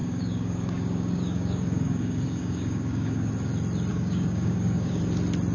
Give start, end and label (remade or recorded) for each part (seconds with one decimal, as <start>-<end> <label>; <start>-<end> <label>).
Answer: 0.0-3.3 remade; 3.3-3.9 recorded; 3.9-5.0 remade; 5.0-5.5 recorded